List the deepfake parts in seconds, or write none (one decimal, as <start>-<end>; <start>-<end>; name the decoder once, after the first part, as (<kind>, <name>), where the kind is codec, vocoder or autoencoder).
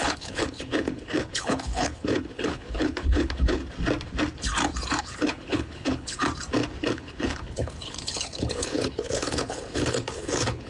0.0-3.6 (codec, HILCodec); 5.0-6.2; 6.9-10.7